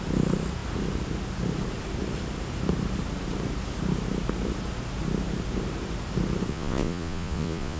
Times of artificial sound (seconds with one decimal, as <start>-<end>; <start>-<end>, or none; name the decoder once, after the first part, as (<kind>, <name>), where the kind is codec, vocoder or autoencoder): 6.5-7.8 (vocoder, Vocos)